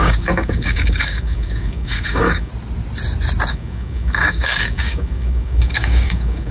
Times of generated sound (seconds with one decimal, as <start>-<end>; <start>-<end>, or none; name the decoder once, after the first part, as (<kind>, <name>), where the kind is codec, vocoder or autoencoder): 0.0-2.5 (codec, DAC); 3.5-6.5